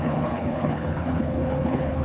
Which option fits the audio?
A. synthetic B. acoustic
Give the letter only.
A